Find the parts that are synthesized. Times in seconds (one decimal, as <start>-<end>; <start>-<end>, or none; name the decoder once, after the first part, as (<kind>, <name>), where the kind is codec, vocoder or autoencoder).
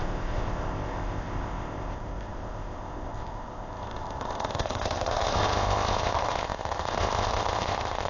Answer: 0.0-8.1 (codec, ZipCodec)